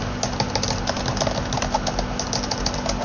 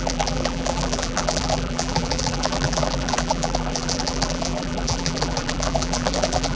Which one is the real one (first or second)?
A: first